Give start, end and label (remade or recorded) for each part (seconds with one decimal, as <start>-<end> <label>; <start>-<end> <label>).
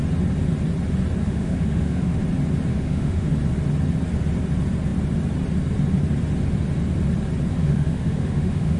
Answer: 0.0-1.2 recorded; 1.2-2.2 remade; 2.2-2.7 recorded; 2.7-3.3 remade; 3.3-7.6 recorded; 7.6-8.8 remade